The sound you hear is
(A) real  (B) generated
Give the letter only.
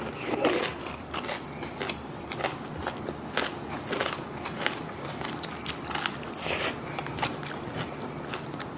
A